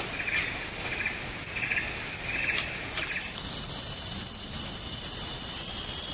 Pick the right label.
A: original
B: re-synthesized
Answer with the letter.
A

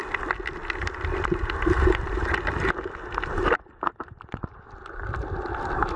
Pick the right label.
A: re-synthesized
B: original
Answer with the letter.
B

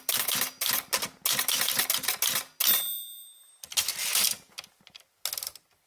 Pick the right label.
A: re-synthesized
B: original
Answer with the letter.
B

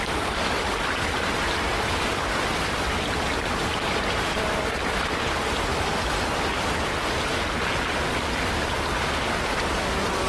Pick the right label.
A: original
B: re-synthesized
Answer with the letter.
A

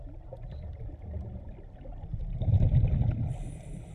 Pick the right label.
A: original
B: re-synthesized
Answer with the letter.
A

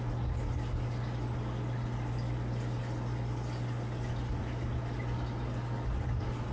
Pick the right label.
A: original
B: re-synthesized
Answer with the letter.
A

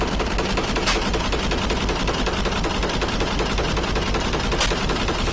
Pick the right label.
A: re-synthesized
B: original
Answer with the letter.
B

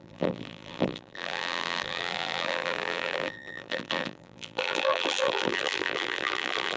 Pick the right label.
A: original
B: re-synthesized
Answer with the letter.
B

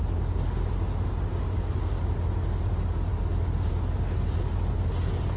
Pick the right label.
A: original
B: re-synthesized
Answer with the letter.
A